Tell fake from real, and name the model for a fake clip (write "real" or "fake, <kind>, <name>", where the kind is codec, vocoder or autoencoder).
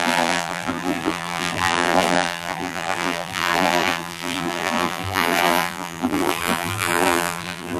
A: fake, vocoder, BigVGAN v2